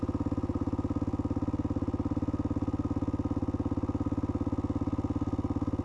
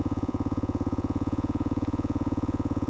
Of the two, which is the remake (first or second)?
second